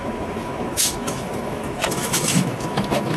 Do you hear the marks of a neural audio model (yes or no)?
yes